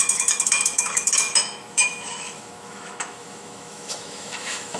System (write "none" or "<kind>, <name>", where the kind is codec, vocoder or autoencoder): autoencoder, DAC-VAE